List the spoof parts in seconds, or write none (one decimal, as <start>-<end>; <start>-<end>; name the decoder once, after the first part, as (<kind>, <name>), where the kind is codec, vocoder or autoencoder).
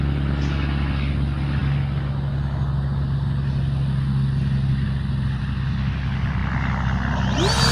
none